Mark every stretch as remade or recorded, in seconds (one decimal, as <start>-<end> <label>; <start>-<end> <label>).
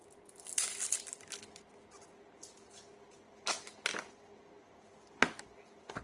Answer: 0.0-6.0 recorded